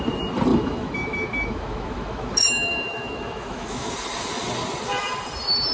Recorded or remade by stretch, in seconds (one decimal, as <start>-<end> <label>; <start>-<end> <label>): 0.0-0.5 recorded; 0.5-3.9 remade; 3.9-5.7 recorded